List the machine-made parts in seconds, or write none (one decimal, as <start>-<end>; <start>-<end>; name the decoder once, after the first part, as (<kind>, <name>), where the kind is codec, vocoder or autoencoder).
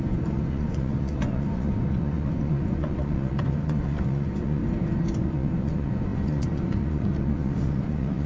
0.0-4.6 (vocoder, Vocos); 5.1-8.3